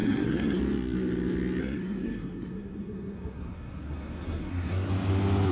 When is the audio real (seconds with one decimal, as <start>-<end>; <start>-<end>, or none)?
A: 0.6-1.6; 4.9-5.5